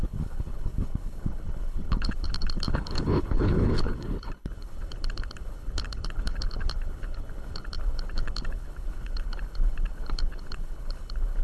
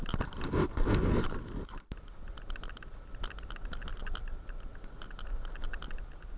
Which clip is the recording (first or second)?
second